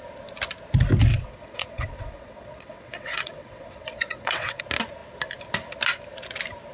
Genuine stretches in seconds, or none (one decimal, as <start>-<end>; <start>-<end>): 0.0-1.1; 4.6-6.7